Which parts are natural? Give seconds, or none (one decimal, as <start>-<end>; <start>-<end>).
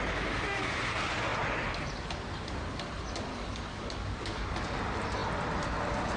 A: 0.0-3.3; 4.5-6.2